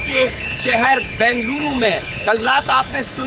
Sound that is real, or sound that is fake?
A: fake